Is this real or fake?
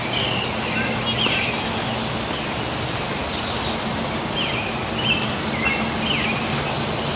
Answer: real